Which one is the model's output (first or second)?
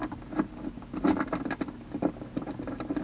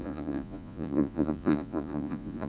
second